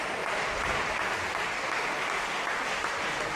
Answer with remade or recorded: recorded